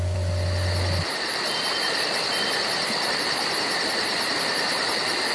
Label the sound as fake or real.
real